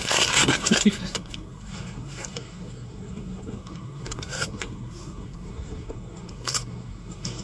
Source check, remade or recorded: remade